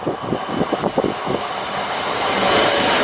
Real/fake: real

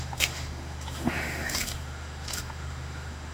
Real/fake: fake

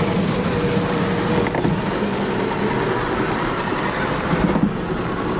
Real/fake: real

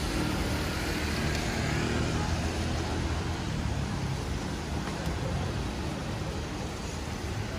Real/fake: real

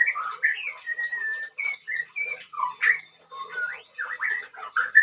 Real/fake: real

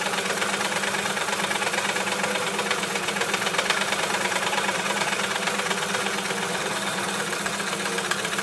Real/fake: real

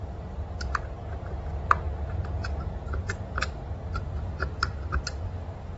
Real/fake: real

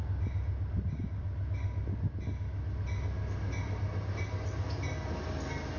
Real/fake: real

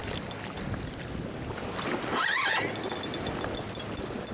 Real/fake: real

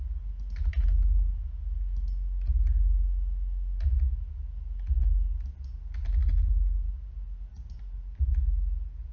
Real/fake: real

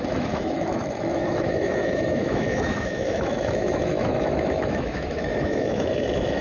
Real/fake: fake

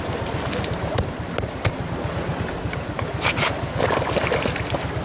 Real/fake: real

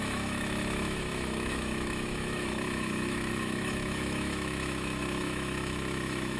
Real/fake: fake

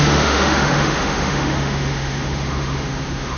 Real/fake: fake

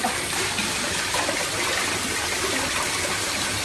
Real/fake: real